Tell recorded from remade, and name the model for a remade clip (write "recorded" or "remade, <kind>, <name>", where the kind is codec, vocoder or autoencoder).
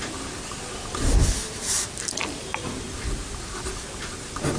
recorded